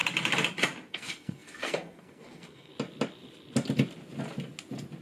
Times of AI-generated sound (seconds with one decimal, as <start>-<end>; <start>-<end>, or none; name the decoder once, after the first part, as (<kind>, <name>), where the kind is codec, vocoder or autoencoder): 0.9-2.7 (codec, SNAC)